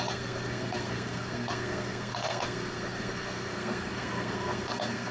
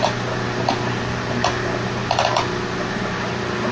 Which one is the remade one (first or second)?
first